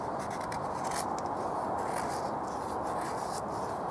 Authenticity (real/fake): real